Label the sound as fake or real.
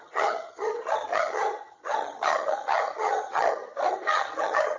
fake